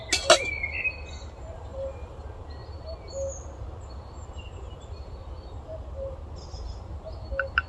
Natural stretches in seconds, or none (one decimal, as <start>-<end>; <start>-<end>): 0.0-1.7; 2.2-7.7